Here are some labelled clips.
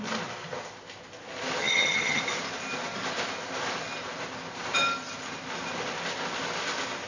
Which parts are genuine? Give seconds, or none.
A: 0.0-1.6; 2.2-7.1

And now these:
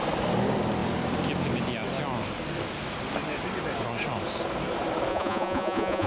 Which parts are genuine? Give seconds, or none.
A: 0.0-5.1

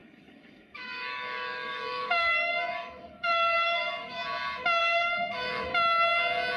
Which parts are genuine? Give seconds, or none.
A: 4.2-4.8; 5.7-6.6